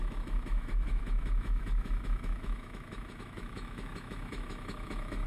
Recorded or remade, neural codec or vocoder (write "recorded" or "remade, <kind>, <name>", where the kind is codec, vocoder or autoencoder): remade, autoencoder, DAC-VAE